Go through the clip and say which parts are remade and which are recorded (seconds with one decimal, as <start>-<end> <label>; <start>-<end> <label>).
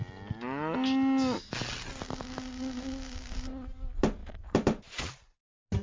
0.0-4.2 recorded; 4.2-5.2 remade; 5.2-5.8 recorded